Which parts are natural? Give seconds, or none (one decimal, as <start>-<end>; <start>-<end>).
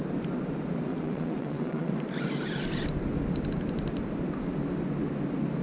0.0-0.9; 1.9-5.6